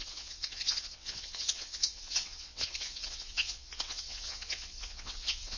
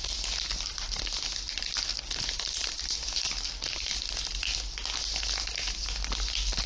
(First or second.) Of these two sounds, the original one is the second